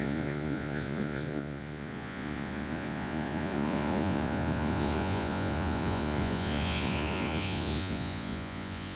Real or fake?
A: fake